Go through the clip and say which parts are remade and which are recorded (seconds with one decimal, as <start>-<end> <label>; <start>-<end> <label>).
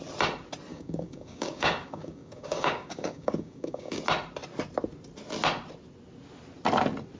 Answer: 0.0-0.7 recorded; 0.7-4.0 remade; 4.0-7.2 recorded